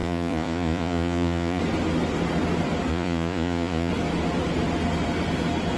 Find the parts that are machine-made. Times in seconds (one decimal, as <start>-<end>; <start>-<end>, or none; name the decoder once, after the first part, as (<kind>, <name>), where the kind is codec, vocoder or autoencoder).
0.0-1.6 (vocoder, Vocos); 2.9-3.9